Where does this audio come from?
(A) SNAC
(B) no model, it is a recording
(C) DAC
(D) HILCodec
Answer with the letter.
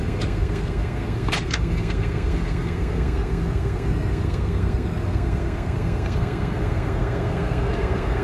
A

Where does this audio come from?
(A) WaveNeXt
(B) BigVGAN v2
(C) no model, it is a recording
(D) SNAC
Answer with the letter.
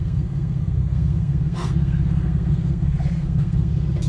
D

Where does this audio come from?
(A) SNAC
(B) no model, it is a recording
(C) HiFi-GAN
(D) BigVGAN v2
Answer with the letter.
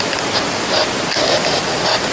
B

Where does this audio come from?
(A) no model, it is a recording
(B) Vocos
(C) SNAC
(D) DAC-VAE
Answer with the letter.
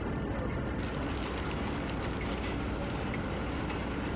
A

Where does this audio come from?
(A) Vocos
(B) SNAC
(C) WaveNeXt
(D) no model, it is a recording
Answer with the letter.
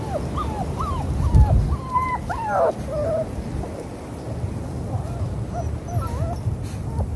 D